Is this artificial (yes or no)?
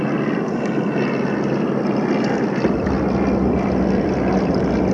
no